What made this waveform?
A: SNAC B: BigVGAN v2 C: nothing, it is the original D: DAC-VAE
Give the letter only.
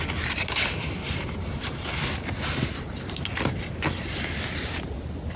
C